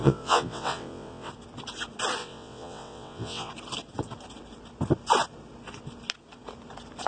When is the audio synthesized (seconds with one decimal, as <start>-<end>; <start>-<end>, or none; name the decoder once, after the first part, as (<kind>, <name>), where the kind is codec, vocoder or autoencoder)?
0.0-1.3 (vocoder, WaveNeXt); 2.2-3.5